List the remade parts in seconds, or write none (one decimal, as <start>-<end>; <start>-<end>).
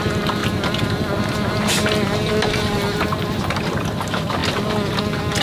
none